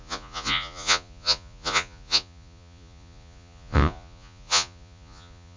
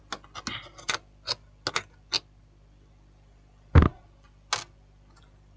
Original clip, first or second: second